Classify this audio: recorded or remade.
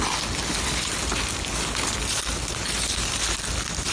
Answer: recorded